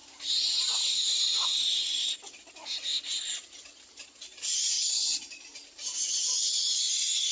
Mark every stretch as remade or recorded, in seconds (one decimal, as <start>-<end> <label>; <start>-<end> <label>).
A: 0.0-7.3 recorded